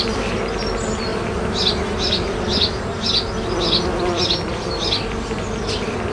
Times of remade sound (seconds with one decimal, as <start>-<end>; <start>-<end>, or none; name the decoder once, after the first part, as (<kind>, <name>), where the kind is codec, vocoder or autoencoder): none